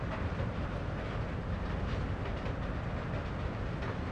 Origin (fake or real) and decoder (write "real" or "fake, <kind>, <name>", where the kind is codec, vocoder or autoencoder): real